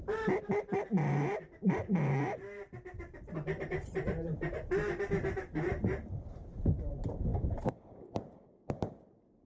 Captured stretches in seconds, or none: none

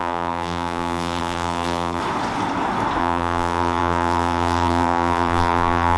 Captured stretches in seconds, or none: 2.0-3.0

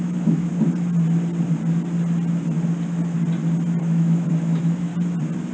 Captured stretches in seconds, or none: 0.5-3.8; 4.9-5.5

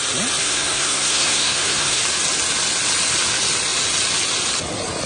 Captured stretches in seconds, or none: 0.0-0.4; 2.0-5.1

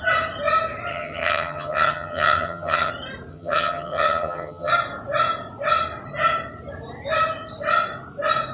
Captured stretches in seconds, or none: 0.0-0.9; 2.9-3.3; 4.7-8.5

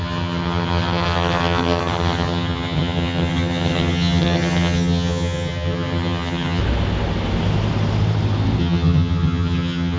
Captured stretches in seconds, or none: 6.6-8.6

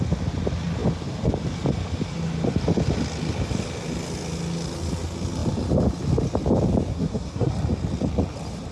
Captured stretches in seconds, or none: 0.0-6.9; 7.5-8.7